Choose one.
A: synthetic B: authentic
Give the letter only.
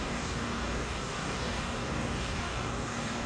A